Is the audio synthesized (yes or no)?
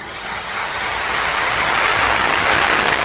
yes